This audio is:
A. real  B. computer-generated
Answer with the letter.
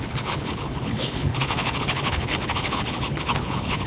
B